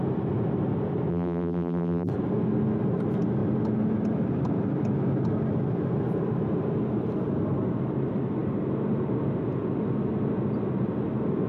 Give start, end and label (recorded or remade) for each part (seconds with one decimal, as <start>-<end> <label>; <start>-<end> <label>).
0.0-1.1 recorded; 1.1-2.1 remade; 2.1-11.5 recorded